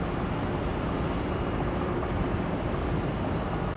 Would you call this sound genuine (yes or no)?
yes